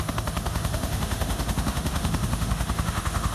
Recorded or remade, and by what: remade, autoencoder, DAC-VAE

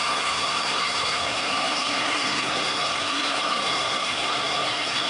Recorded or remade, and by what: remade, codec, SNAC